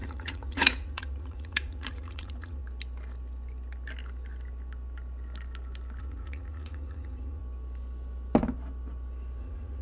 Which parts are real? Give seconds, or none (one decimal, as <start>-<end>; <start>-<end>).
2.6-6.0; 7.4-9.4